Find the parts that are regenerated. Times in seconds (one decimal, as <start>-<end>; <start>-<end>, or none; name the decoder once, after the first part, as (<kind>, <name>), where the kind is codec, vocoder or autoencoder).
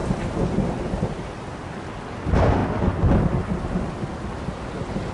none